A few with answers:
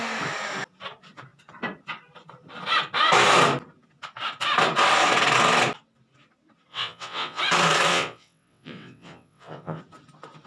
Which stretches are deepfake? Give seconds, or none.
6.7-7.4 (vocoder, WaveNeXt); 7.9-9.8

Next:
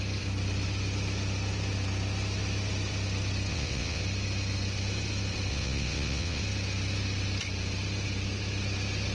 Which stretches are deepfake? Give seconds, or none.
3.5-4.0 (vocoder, WaveNeXt); 5.5-6.4

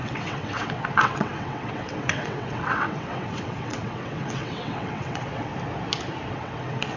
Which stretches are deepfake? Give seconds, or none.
0.0-5.5 (vocoder, WaveNeXt); 6.3-7.0

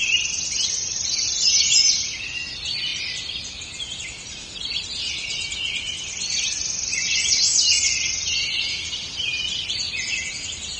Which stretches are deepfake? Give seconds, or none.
none